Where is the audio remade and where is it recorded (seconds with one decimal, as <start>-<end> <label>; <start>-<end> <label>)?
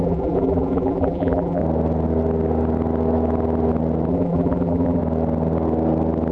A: 0.0-1.6 remade; 1.6-4.1 recorded; 4.1-5.0 remade; 5.0-6.3 recorded